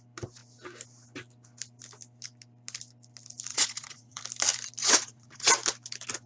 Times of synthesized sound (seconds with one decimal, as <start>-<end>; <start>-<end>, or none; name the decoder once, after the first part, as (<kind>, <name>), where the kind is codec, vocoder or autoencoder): 3.5-4.2 (vocoder, Vocos); 4.8-5.5